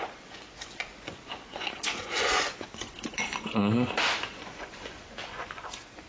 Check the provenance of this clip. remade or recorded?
remade